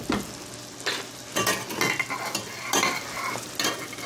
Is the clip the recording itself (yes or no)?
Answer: yes